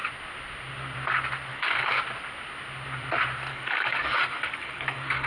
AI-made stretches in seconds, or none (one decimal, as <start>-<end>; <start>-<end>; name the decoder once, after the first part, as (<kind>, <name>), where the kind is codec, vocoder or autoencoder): 1.5-2.0 (codec, DAC); 3.5-5.3